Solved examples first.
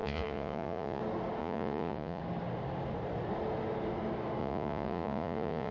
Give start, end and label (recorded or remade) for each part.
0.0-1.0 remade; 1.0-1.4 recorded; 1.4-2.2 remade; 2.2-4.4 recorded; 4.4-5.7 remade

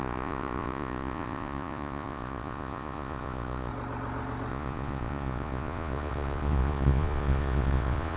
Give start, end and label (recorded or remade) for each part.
0.0-3.7 remade; 3.7-4.5 recorded; 4.5-8.2 remade

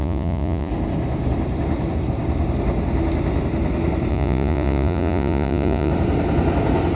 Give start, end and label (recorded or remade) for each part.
0.0-0.7 remade; 0.7-4.1 recorded; 4.1-5.9 remade; 5.9-7.0 recorded

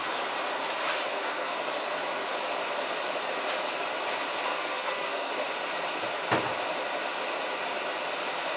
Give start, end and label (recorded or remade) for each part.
0.0-1.1 recorded; 1.1-1.6 remade; 1.6-4.5 recorded; 4.5-5.3 remade; 5.3-8.6 recorded

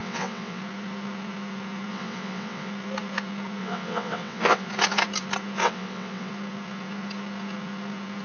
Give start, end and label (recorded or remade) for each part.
0.0-0.6 remade; 0.6-1.9 recorded; 1.9-2.7 remade; 2.7-3.6 recorded; 3.6-4.7 remade; 4.7-5.6 recorded; 5.6-6.3 remade; 6.3-8.2 recorded